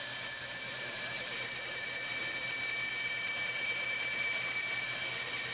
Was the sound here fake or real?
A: real